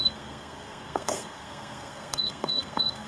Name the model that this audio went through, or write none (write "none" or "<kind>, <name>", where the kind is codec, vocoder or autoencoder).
codec, SNAC